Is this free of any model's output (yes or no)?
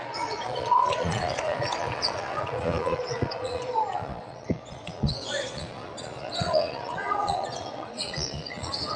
no